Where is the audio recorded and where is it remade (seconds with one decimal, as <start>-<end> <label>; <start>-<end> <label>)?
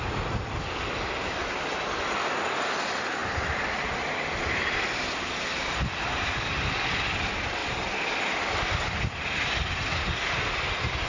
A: 0.0-11.1 recorded